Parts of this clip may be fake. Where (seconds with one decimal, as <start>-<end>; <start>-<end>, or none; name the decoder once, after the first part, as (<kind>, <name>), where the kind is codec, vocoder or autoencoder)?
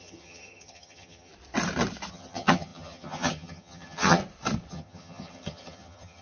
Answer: 0.0-1.3 (vocoder, HiFi-GAN); 2.1-4.2; 4.7-6.2